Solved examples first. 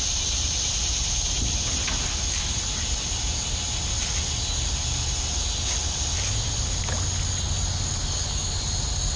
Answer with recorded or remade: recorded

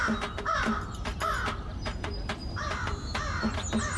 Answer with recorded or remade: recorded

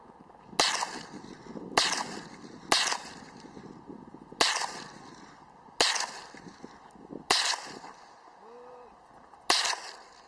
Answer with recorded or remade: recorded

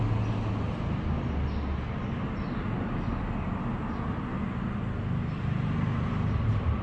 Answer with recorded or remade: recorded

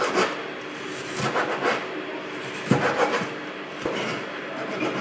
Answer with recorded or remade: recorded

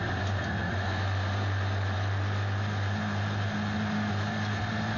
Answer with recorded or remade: recorded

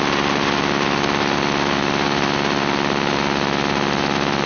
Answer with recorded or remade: recorded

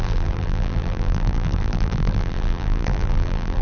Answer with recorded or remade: remade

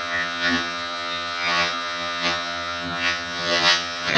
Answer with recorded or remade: remade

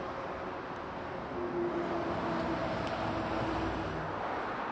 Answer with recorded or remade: recorded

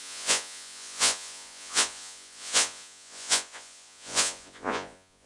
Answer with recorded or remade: remade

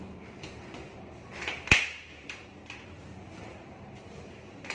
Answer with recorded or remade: remade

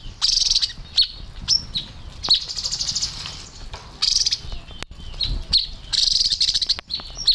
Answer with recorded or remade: recorded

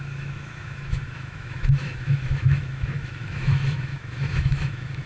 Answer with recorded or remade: remade